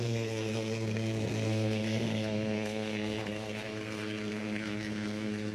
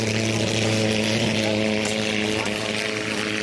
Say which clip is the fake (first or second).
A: first